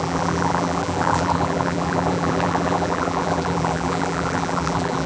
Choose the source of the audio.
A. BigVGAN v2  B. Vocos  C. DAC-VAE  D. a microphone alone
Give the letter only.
A